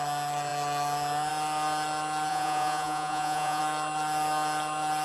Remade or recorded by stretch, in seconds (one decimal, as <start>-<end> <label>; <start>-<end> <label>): 0.0-2.3 recorded; 2.3-3.6 remade; 3.6-5.0 recorded